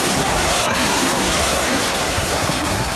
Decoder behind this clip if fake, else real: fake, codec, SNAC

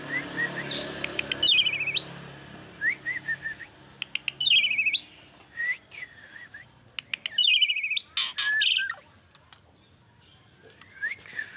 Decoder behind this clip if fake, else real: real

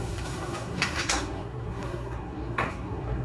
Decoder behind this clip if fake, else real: fake, codec, SNAC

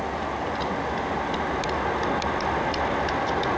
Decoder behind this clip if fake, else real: real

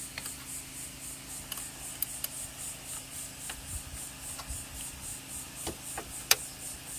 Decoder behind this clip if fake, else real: real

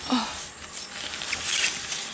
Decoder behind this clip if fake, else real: real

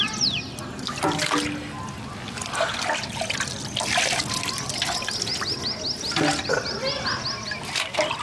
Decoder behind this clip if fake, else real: real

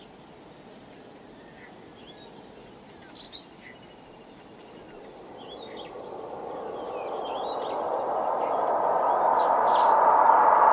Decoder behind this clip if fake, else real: real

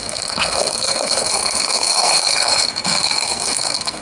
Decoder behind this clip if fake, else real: fake, codec, SNAC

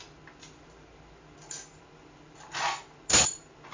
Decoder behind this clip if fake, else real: real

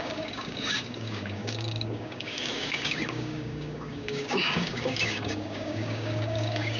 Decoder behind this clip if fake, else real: fake, codec, DAC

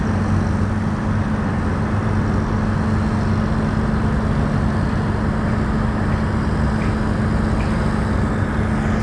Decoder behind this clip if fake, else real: real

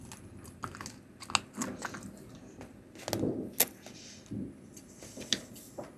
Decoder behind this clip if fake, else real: real